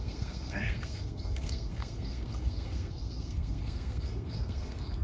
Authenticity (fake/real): fake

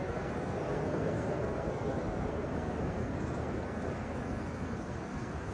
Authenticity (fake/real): fake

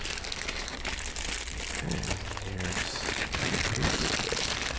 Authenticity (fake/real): real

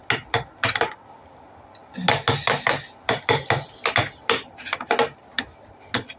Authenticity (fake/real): real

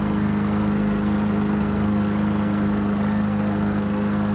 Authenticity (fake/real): fake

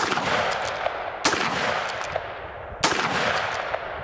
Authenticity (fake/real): real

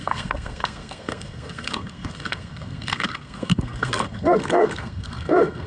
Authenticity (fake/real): fake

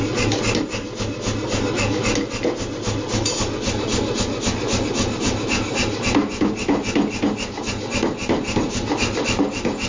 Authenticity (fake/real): real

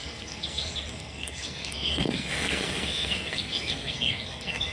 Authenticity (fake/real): fake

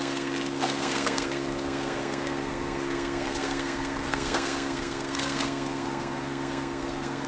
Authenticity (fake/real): fake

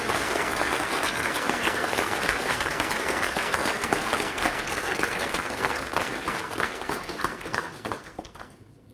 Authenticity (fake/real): fake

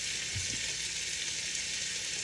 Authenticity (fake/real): real